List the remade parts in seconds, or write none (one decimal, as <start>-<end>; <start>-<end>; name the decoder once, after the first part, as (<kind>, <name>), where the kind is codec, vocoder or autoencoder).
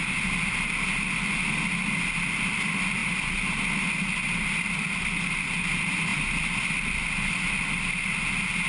none